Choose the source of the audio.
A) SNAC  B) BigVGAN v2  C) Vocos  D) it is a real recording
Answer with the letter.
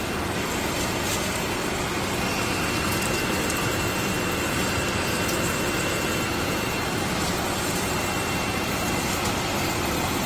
D